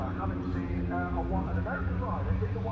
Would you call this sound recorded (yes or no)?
yes